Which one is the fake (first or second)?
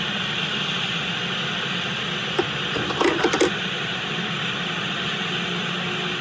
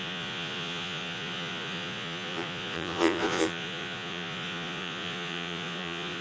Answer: second